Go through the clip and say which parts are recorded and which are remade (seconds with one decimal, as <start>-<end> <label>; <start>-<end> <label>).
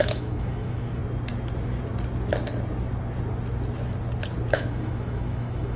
0.0-1.0 remade; 1.0-4.5 recorded; 4.5-5.8 remade